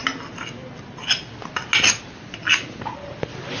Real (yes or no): yes